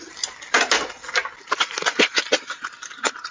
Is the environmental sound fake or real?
real